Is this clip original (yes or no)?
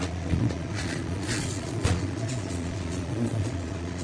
no